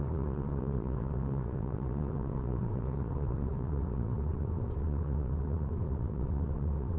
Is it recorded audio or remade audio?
remade